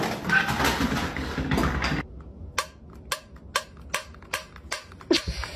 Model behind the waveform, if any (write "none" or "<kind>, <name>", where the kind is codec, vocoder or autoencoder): none